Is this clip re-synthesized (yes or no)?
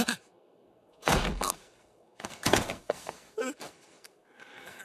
yes